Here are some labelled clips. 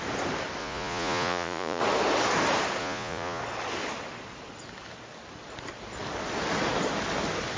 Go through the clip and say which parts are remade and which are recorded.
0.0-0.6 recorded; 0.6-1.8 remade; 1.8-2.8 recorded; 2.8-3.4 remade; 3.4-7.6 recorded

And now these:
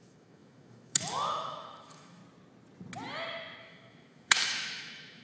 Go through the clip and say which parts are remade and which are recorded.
0.0-2.2 remade; 2.2-3.6 recorded; 3.6-5.2 remade